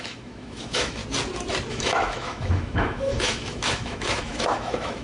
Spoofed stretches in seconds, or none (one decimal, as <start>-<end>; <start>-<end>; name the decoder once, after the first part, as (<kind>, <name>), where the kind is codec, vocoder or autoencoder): 0.0-1.0 (autoencoder, DAC-VAE); 1.7-5.0